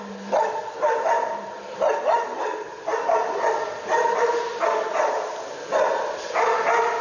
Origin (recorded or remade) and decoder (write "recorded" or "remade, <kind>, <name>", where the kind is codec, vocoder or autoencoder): recorded